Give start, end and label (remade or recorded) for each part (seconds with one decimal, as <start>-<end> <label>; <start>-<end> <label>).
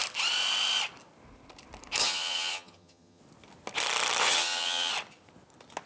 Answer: 0.0-2.0 recorded; 2.0-3.2 remade; 3.2-4.2 recorded; 4.2-4.9 remade; 4.9-5.9 recorded